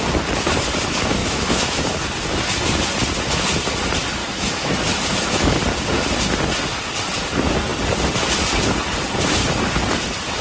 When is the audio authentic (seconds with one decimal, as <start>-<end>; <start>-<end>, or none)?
0.0-1.2; 1.8-4.2; 5.6-10.4